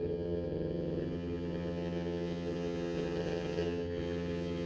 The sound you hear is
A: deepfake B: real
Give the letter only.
A